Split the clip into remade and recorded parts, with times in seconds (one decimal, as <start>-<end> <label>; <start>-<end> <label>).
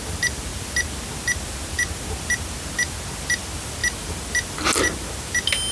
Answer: 0.0-5.7 recorded